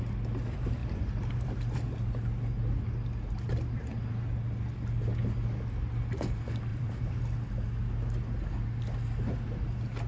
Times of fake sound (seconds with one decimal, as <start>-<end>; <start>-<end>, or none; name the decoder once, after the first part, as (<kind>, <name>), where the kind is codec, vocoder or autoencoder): 0.8-1.6 (vocoder, BigVGAN v2); 6.7-7.2